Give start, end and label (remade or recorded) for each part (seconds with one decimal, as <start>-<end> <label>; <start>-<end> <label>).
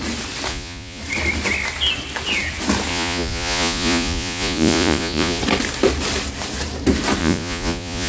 0.0-0.5 recorded; 0.5-1.0 remade; 1.0-2.9 recorded; 2.9-5.4 remade; 5.4-7.2 recorded; 7.2-8.1 remade